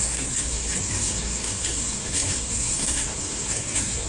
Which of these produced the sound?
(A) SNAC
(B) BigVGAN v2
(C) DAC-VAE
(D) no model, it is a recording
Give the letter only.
A